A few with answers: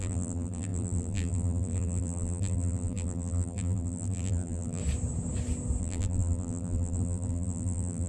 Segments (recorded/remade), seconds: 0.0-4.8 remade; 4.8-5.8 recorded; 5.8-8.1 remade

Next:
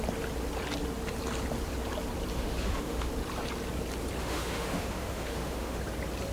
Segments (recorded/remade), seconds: 0.0-2.3 recorded; 2.3-3.1 remade; 3.1-4.2 recorded; 4.2-5.8 remade; 5.8-6.3 recorded

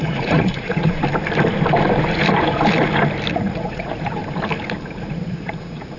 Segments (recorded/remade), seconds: 0.0-1.0 remade; 1.0-3.3 recorded; 3.3-4.2 remade; 4.2-4.9 recorded; 4.9-6.0 remade

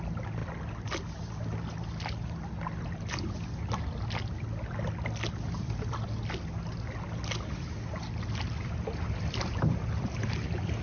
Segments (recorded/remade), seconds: 0.0-10.8 recorded

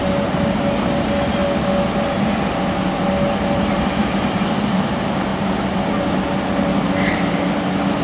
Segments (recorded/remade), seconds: 0.0-8.0 recorded

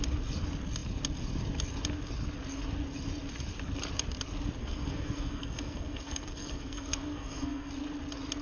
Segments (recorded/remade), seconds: 0.0-4.6 recorded; 4.6-7.7 remade; 7.7-8.4 recorded